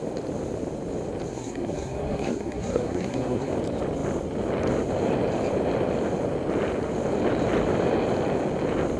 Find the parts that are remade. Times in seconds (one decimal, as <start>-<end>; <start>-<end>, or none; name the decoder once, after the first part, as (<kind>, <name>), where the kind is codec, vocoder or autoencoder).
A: 1.3-3.5 (codec, SNAC)